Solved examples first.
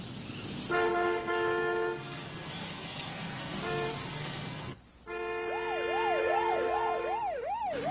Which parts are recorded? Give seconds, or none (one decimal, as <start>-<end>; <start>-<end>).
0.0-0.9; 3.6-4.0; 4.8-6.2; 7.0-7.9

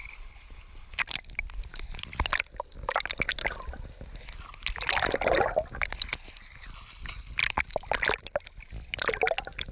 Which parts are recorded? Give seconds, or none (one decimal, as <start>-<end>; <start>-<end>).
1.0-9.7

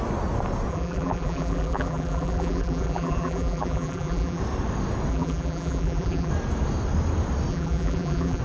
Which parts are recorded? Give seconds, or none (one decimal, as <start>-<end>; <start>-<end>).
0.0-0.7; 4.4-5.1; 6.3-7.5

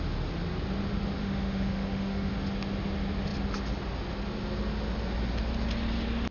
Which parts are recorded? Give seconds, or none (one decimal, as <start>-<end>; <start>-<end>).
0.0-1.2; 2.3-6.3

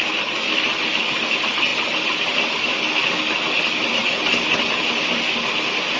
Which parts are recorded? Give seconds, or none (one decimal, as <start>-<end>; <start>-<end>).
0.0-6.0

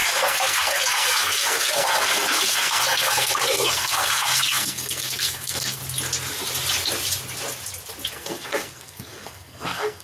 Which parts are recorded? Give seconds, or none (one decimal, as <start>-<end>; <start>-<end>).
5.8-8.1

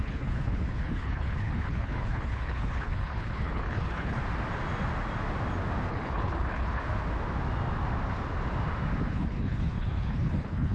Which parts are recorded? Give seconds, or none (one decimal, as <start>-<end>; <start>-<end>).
4.2-5.9; 6.8-9.1